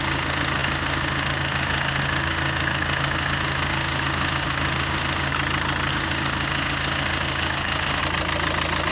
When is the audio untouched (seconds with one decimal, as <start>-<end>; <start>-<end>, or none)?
5.3-5.9; 8.0-8.9

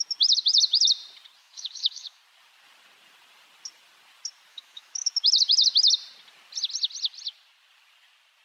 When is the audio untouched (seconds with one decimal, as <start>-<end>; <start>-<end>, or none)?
0.0-1.4; 2.2-4.5; 5.2-8.4

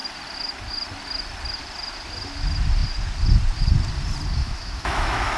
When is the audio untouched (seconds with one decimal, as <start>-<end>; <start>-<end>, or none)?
0.0-4.4